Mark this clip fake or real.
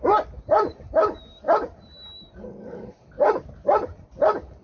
real